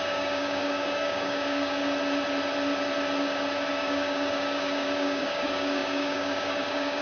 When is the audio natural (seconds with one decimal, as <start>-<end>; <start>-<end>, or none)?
1.8-3.7